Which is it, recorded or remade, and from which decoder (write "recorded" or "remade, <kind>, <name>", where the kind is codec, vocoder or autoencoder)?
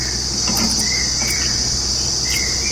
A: recorded